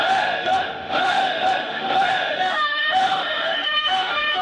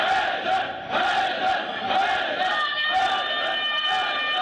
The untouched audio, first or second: second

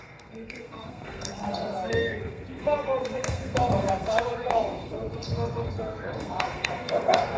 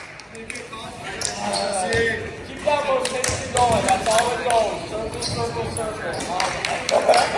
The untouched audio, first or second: second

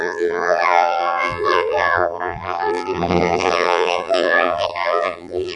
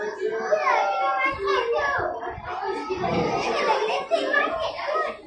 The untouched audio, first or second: second